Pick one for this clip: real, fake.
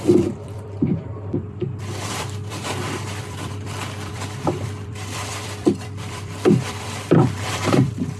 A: fake